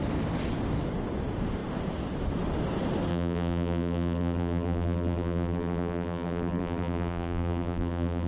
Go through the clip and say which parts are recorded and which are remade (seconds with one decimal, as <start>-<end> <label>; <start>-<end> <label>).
0.0-3.1 recorded; 3.1-8.3 remade